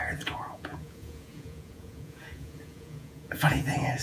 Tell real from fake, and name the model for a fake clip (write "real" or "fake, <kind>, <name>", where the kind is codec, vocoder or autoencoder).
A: fake, vocoder, Vocos